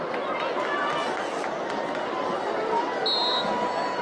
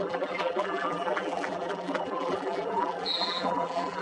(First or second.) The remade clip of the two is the second